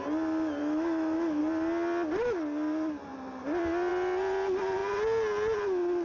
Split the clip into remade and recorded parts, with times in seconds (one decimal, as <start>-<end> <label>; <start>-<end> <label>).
0.0-0.6 recorded; 0.6-1.4 remade; 1.4-6.0 recorded